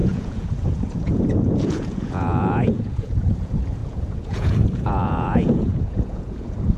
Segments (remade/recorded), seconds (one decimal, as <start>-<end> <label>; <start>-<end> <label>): 0.0-6.8 remade